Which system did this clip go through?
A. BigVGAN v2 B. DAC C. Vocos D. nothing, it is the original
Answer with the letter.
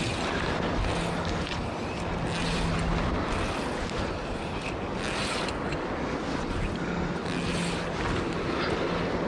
D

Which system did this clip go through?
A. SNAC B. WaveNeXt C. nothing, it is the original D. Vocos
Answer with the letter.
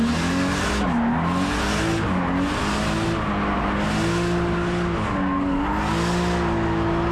C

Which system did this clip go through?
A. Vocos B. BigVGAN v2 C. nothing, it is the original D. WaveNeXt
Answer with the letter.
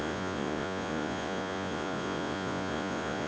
A